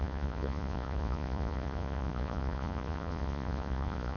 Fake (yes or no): yes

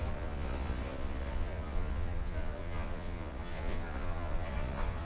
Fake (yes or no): yes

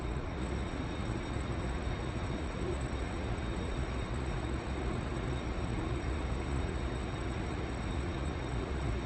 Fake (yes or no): yes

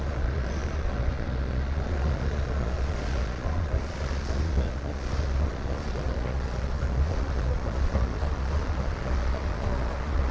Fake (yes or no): yes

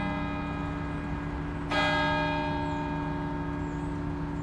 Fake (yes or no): no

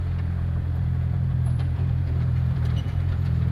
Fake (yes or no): yes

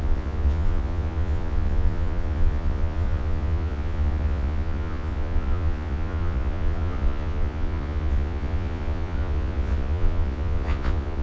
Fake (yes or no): yes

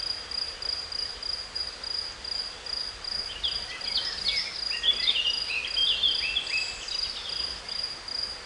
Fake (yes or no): no